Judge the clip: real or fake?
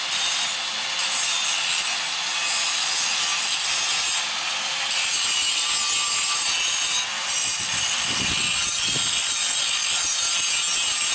real